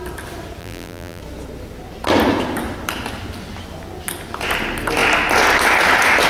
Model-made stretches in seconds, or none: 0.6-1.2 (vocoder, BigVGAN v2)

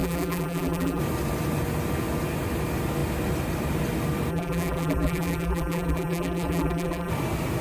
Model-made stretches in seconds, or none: 0.0-1.0 (vocoder, BigVGAN v2); 4.3-7.1

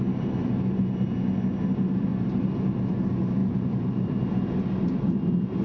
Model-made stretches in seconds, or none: 2.1-2.8 (vocoder, BigVGAN v2); 3.4-4.1

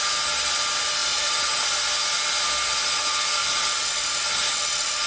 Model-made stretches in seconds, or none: 1.0-1.6 (vocoder, BigVGAN v2)

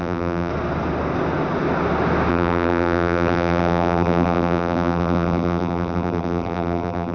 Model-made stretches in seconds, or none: 0.0-0.5 (vocoder, BigVGAN v2); 2.3-7.1